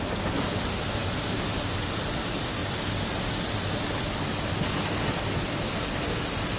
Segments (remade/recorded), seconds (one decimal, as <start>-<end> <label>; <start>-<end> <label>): 0.0-6.6 recorded